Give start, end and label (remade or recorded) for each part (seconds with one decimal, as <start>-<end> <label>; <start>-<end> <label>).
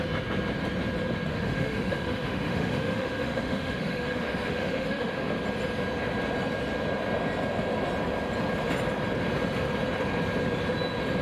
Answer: 0.0-1.3 recorded; 1.3-5.3 remade; 5.3-11.2 recorded